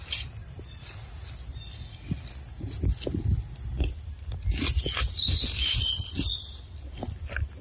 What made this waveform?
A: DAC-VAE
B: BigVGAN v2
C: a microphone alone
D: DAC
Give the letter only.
C